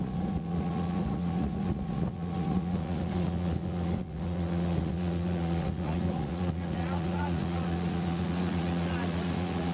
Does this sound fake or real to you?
fake